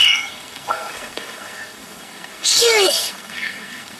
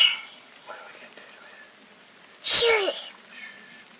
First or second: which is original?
second